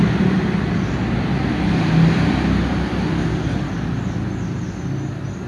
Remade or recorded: recorded